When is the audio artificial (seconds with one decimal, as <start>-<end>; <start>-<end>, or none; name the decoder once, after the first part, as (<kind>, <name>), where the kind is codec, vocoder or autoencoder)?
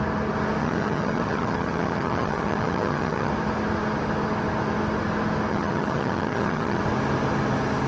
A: 0.6-3.3 (vocoder, HiFi-GAN); 5.5-6.8